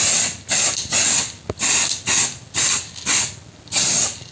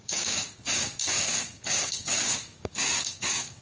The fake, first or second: second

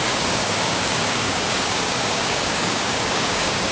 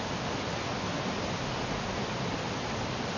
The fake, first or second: first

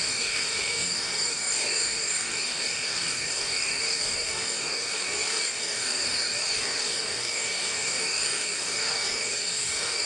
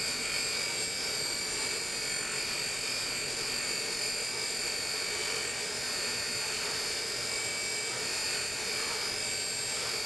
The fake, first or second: first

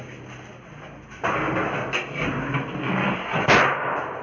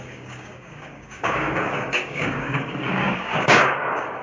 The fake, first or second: second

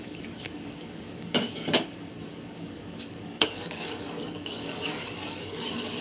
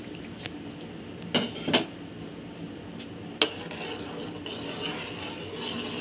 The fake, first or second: first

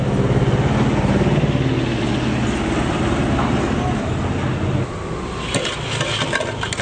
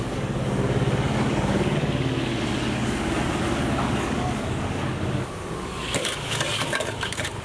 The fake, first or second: second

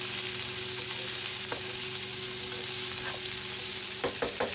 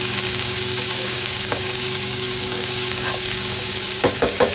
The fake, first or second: second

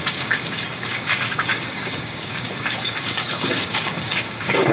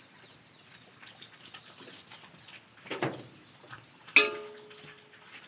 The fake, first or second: first